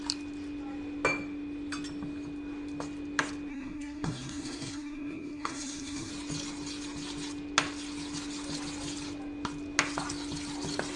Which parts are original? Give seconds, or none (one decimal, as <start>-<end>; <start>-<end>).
0.0-3.5; 6.1-11.0